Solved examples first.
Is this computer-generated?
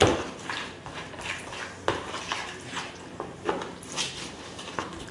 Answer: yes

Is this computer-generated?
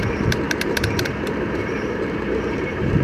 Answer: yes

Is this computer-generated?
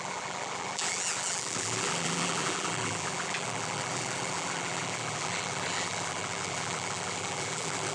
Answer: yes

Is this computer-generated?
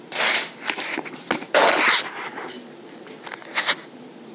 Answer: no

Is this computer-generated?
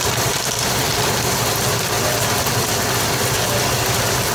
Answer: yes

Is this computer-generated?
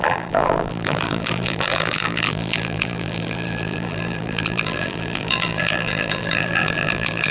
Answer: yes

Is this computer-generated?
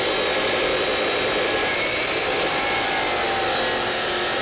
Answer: no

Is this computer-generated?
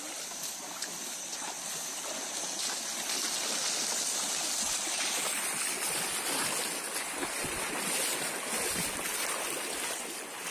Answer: no